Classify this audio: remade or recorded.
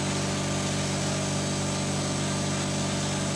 recorded